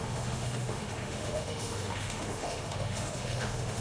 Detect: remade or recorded remade